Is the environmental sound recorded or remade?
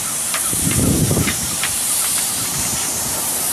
remade